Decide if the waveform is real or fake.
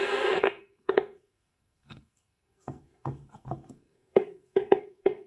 fake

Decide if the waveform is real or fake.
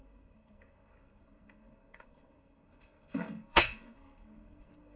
fake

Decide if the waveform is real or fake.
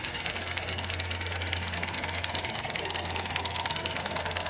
fake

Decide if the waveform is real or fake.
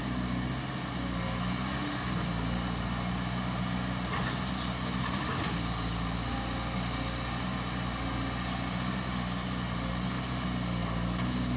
real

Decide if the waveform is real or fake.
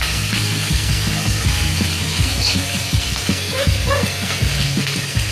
fake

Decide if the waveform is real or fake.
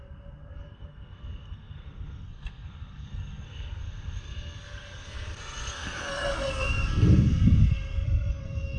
fake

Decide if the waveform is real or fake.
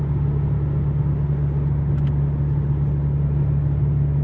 real